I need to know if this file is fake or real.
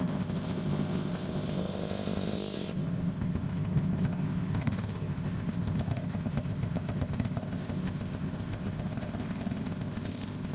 fake